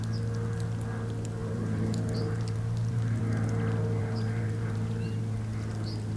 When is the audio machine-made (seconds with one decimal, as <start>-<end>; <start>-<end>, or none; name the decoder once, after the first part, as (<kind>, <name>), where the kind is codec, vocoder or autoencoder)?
1.4-3.2 (vocoder, BigVGAN v2); 4.0-5.2